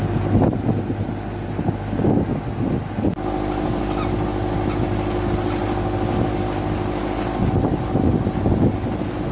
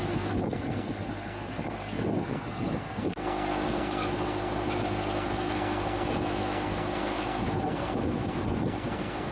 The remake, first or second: second